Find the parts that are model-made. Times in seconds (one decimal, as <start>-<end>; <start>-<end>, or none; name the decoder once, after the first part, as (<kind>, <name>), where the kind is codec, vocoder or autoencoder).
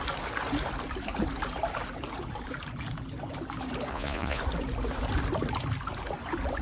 3.9-4.4 (vocoder, Vocos)